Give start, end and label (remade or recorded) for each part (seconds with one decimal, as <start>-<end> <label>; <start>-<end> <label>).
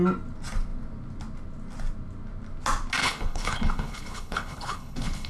0.0-3.0 recorded; 3.0-5.3 remade